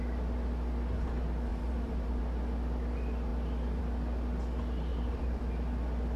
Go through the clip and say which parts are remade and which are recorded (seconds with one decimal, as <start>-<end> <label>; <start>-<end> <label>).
0.0-1.5 recorded; 1.5-2.2 remade; 2.2-4.9 recorded; 4.9-5.4 remade; 5.4-6.2 recorded